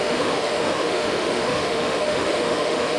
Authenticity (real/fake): fake